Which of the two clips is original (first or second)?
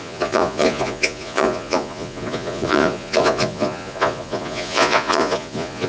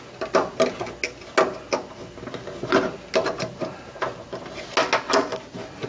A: second